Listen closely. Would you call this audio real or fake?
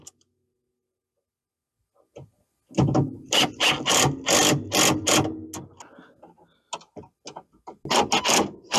real